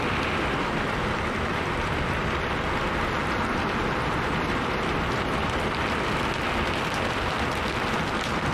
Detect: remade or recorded recorded